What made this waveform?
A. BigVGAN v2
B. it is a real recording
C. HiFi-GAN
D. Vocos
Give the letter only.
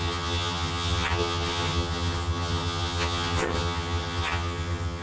C